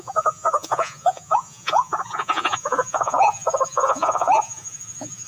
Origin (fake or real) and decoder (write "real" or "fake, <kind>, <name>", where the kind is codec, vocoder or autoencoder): fake, vocoder, Vocos